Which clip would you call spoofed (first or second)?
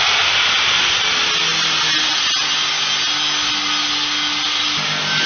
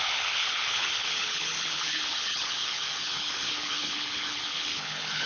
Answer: second